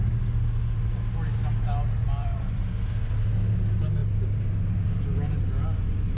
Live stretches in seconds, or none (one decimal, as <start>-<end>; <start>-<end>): 0.0-2.0; 2.6-4.0; 5.0-6.2